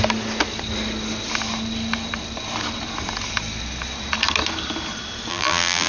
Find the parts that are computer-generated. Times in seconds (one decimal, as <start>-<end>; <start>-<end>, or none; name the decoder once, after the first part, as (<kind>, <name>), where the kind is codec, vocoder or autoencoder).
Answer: 5.3-5.9 (vocoder, BigVGAN v2)